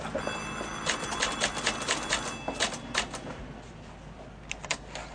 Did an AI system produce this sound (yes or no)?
no